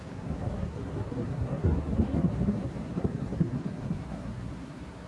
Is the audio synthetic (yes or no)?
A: yes